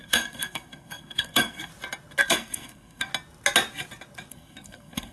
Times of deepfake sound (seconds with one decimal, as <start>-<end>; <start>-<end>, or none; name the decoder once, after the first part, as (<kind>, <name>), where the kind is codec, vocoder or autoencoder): 0.0-1.7 (codec, SNAC); 2.2-3.1; 4.3-5.1